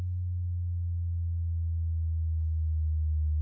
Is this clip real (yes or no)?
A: no